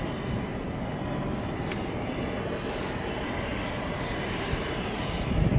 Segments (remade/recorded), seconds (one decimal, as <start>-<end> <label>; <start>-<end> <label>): 0.0-0.5 remade; 0.5-3.9 recorded; 3.9-5.6 remade